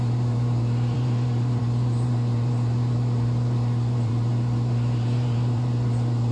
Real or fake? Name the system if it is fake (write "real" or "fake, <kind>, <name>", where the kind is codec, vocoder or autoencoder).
fake, vocoder, BigVGAN v2